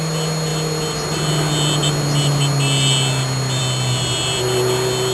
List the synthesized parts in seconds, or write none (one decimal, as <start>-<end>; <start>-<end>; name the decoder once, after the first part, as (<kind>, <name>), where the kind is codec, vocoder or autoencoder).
none